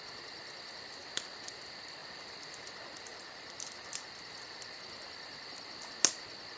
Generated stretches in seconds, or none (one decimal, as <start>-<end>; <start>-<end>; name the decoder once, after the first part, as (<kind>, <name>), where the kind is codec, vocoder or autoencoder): 1.0-1.6 (vocoder, BigVGAN v2); 2.0-2.6; 3.1-4.8